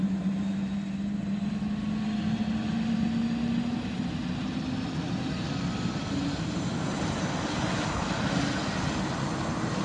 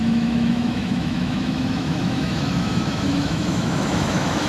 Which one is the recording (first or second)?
first